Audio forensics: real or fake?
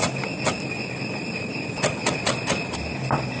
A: real